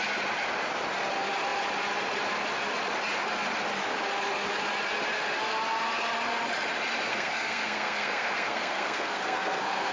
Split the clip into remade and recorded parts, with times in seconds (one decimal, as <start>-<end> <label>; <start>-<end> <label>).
0.0-7.1 recorded; 7.1-9.9 remade